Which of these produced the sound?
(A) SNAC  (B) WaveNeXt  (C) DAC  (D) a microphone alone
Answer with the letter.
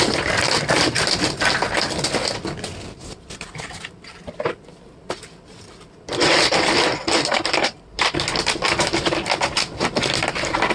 D